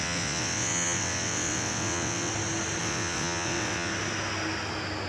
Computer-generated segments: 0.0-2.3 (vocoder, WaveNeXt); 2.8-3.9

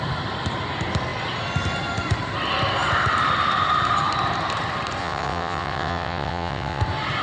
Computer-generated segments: 5.0-6.8 (vocoder, WaveNeXt)

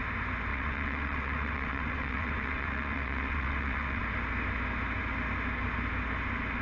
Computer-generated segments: 0.5-4.0 (vocoder, WaveNeXt)

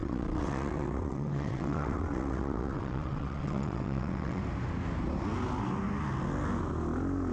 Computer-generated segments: 0.0-4.4 (vocoder, WaveNeXt)

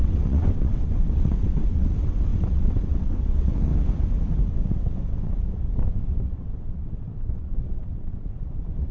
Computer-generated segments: 0.0-3.7 (vocoder, WaveNeXt); 4.5-8.9